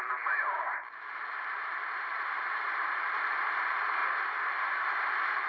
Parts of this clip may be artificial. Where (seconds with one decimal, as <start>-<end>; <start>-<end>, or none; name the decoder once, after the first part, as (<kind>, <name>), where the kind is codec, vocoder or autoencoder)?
0.0-4.0 (vocoder, BigVGAN v2); 4.5-5.5